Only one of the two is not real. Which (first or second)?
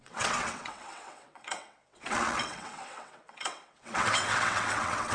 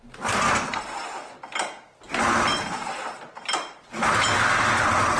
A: first